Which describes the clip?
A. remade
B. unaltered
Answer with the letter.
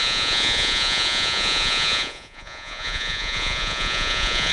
A